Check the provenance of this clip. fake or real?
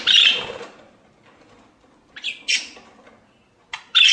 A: real